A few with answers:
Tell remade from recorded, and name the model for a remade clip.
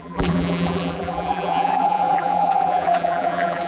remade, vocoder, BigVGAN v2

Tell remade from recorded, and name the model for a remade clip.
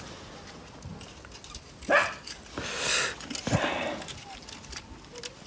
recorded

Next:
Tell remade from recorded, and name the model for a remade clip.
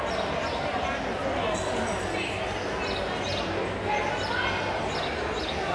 recorded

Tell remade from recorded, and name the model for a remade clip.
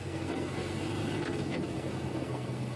remade, codec, SNAC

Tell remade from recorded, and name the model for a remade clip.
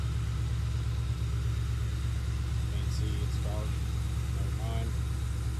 recorded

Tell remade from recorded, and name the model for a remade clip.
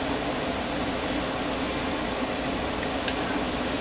recorded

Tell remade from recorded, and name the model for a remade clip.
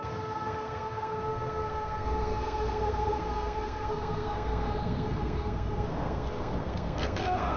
remade, codec, SNAC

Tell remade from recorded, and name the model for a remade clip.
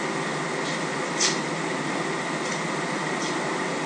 recorded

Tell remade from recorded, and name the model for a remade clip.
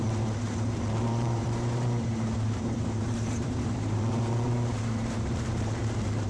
remade, vocoder, BigVGAN v2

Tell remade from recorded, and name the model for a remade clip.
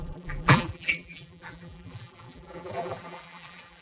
remade, vocoder, BigVGAN v2